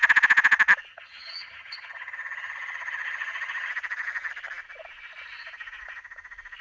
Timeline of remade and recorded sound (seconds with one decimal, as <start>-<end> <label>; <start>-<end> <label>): 0.0-0.9 recorded; 0.9-3.7 remade; 3.7-6.6 recorded